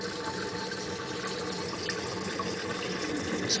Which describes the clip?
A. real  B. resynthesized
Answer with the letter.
A